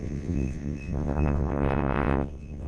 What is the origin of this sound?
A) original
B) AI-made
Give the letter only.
B